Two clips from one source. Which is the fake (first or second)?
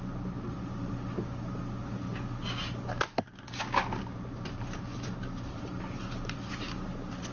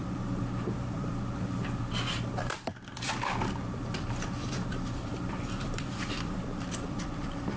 second